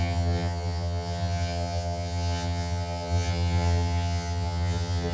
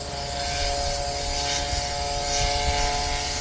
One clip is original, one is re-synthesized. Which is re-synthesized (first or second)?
first